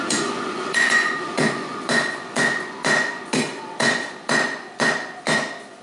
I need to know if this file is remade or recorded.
remade